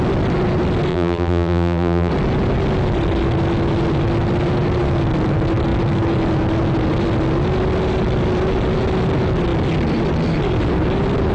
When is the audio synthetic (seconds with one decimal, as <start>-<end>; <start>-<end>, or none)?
0.9-2.1